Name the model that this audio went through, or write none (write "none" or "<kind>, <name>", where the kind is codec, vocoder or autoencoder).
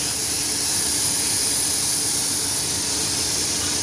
vocoder, BigVGAN v2